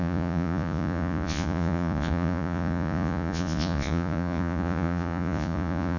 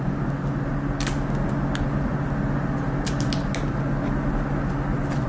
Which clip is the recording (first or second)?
second